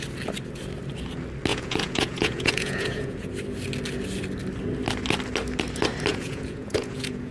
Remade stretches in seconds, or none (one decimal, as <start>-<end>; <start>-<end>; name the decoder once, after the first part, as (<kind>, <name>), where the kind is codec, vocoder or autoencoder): 1.5-3.3 (vocoder, Vocos); 6.1-7.3